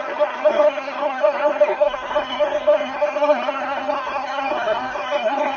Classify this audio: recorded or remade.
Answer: remade